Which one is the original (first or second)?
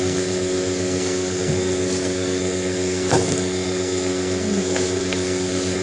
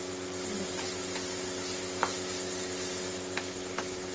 second